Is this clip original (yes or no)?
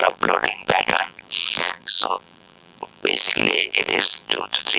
no